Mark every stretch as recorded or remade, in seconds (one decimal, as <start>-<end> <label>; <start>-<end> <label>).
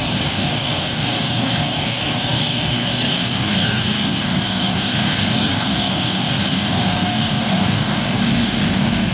0.0-9.1 remade